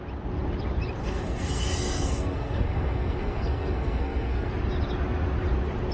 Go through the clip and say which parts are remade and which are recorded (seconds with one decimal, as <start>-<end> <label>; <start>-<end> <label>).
0.0-1.0 recorded; 1.0-4.5 remade; 4.5-5.9 recorded